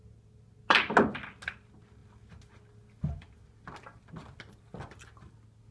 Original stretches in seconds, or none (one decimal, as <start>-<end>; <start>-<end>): 0.0-5.7